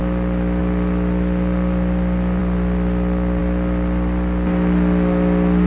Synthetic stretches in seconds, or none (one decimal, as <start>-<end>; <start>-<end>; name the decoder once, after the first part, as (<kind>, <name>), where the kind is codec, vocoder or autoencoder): none